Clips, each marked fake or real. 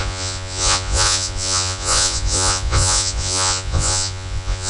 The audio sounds fake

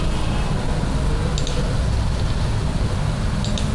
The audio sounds real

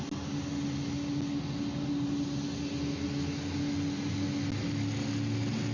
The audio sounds real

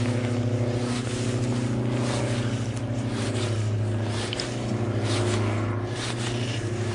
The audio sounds real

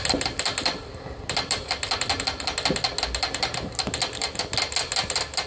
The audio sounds real